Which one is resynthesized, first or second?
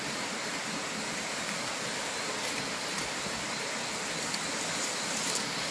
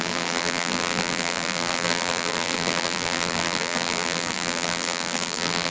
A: second